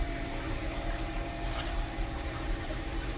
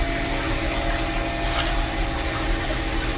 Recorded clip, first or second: second